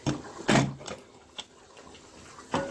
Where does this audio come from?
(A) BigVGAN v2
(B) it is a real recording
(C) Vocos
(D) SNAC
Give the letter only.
B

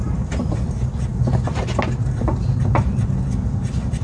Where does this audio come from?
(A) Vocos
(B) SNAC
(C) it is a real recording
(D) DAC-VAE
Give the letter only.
C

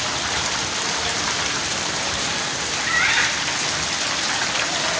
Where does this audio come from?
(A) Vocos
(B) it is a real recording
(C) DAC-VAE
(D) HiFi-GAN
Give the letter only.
B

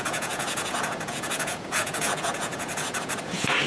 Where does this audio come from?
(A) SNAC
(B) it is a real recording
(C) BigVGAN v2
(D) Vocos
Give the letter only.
D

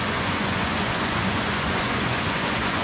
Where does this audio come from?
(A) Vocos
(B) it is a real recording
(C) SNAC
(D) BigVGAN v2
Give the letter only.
A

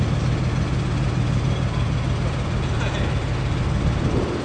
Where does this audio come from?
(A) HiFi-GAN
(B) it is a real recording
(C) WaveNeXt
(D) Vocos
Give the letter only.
B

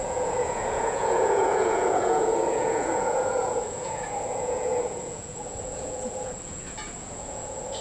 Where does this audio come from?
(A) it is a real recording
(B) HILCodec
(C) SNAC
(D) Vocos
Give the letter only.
D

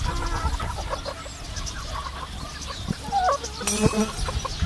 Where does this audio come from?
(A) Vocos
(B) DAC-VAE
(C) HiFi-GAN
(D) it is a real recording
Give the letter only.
D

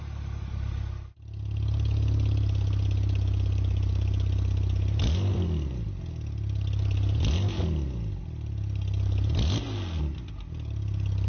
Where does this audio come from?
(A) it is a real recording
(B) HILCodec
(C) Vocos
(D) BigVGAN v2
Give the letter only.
A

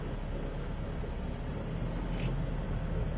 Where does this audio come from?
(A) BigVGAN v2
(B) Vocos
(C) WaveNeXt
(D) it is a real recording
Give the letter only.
D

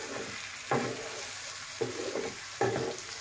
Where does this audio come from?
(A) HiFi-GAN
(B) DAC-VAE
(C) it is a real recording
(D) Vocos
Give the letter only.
C